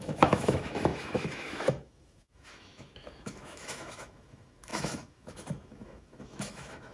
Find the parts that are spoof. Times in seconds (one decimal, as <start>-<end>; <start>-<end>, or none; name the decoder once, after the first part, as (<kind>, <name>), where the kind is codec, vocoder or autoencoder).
0.0-6.9 (autoencoder, DAC-VAE)